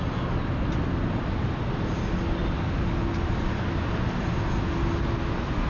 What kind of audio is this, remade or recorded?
recorded